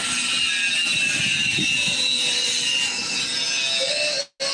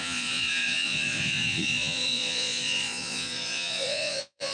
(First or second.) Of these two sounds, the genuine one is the first